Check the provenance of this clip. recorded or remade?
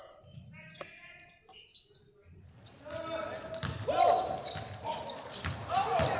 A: recorded